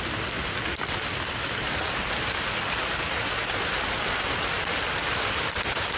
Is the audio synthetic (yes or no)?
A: no